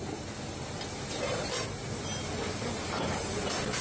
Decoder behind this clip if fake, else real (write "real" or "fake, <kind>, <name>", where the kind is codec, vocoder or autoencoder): real